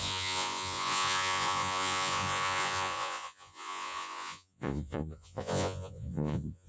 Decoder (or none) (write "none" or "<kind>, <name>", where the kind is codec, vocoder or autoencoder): vocoder, Vocos